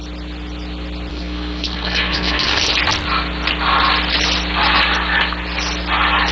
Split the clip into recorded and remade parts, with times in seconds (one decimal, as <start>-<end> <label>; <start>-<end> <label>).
0.0-1.1 recorded; 1.1-2.7 remade; 2.7-6.3 recorded